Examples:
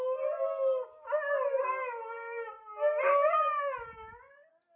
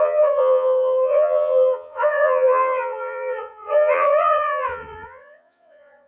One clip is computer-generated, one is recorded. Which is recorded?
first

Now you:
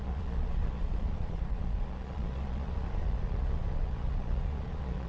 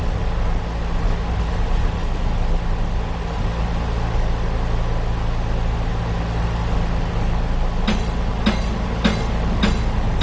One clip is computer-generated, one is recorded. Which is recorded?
second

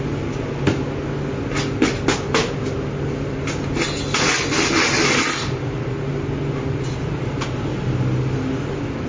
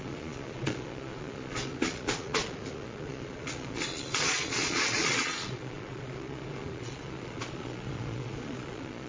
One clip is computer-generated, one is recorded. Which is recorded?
first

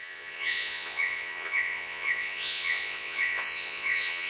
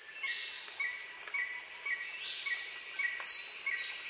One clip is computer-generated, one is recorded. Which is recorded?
second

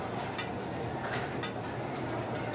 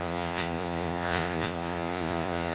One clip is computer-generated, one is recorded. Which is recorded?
first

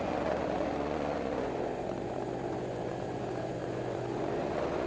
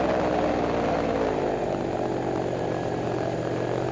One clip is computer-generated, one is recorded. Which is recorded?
second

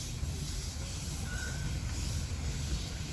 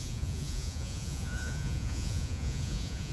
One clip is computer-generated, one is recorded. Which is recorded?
first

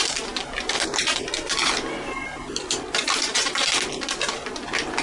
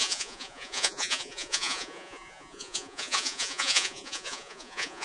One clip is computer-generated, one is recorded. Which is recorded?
first